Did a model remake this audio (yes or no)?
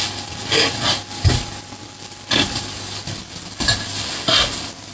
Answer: no